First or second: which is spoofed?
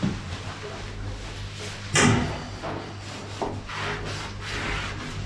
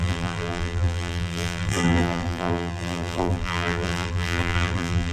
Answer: second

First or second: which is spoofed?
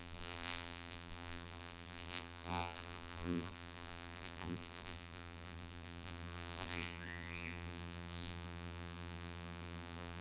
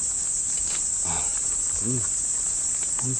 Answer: first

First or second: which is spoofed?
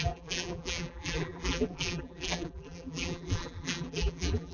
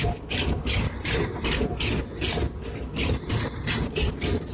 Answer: first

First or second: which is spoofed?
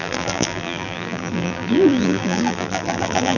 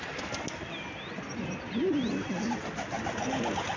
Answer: first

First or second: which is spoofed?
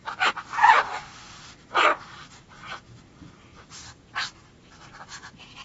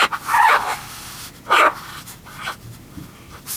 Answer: first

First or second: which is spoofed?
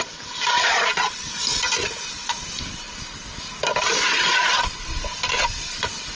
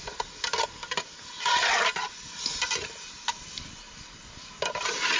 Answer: first